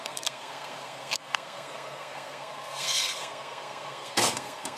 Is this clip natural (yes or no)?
no